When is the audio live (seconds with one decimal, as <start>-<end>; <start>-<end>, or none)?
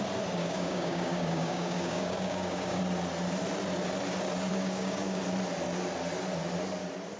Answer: 0.0-0.4; 2.8-4.5; 5.2-7.2